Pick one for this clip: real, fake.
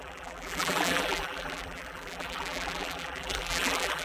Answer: fake